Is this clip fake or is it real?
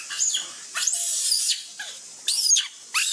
fake